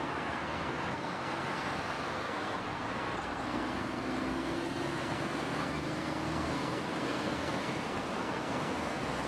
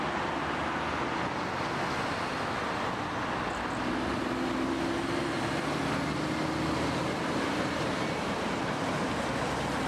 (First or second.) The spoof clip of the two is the first